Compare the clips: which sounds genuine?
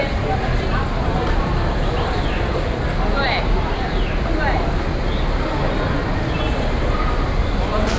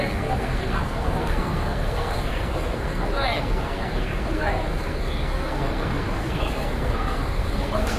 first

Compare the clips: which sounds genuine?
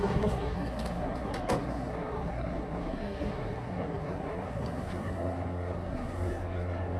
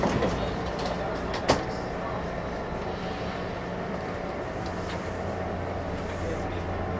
second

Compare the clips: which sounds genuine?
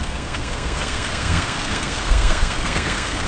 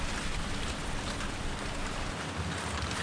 second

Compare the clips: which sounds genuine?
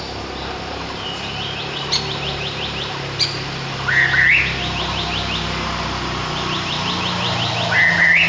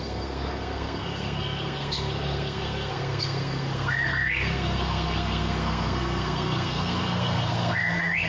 first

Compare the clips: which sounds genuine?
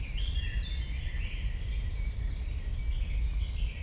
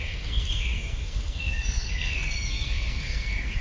first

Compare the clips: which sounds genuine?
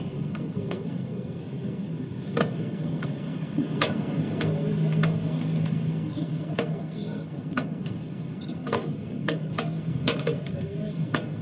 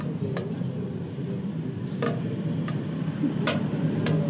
second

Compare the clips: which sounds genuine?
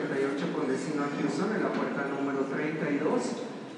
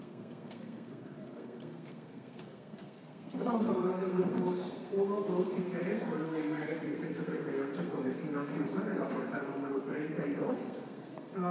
first